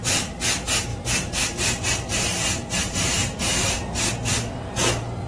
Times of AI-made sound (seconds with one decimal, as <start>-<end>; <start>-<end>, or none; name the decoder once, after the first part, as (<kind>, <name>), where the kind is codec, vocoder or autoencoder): 0.9-4.1 (vocoder, BigVGAN v2)